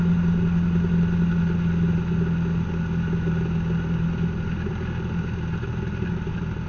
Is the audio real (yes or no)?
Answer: yes